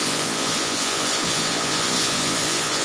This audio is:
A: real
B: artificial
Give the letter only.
B